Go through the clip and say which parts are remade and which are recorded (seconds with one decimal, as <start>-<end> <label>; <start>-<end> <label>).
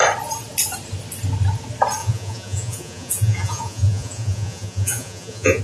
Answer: 0.0-2.0 recorded; 2.0-5.6 remade